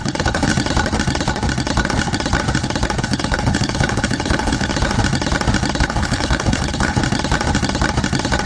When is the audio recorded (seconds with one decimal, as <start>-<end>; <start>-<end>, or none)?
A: 0.5-3.0; 4.7-5.8; 7.0-8.5